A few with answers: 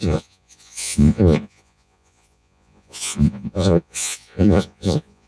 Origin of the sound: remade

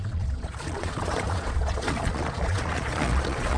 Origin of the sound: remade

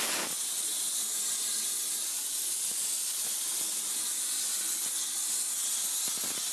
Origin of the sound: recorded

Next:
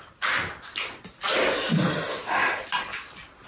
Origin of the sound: recorded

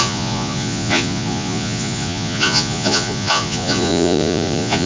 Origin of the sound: remade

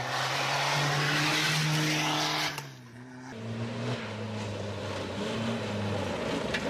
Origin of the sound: recorded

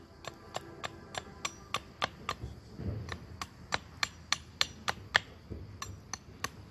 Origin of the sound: recorded